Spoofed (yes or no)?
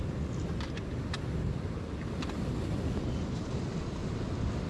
no